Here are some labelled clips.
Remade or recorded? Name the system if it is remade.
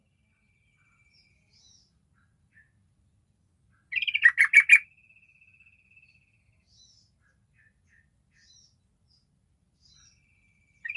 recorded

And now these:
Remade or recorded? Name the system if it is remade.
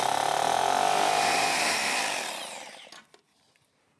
recorded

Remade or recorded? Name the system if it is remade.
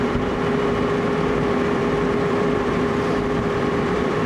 remade, vocoder, BigVGAN v2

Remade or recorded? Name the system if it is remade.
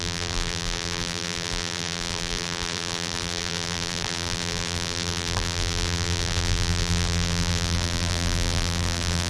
remade, vocoder, BigVGAN v2